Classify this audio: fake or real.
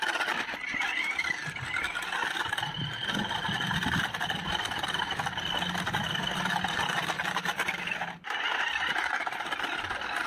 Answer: real